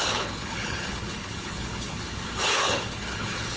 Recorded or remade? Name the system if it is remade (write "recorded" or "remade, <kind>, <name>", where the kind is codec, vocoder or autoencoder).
remade, codec, HILCodec